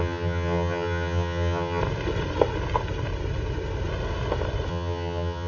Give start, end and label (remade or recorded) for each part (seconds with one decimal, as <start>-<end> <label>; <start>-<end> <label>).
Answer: 0.0-1.8 remade; 1.8-4.7 recorded; 4.7-5.5 remade